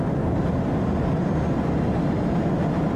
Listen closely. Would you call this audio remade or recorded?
recorded